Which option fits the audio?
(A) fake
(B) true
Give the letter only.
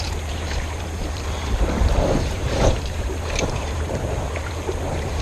A